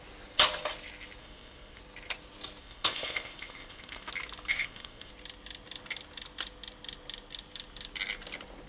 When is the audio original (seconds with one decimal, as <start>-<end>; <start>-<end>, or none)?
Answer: 0.0-1.2; 1.8-2.6; 4.1-4.5; 5.1-8.7